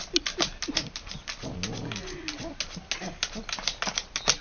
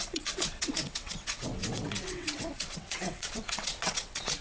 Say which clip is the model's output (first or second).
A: second